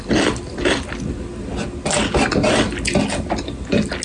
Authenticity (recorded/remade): recorded